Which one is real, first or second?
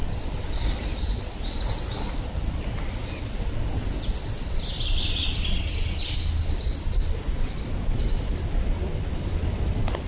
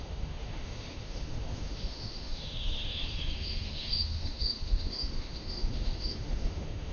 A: first